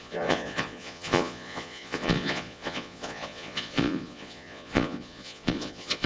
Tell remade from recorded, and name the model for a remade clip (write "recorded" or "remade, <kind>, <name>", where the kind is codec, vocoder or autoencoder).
remade, vocoder, Vocos